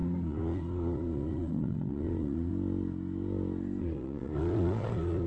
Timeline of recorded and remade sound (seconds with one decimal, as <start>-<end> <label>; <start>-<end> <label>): 0.0-2.5 remade; 2.5-3.8 recorded; 3.8-5.3 remade